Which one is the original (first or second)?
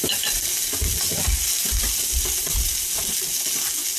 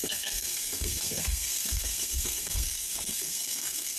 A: first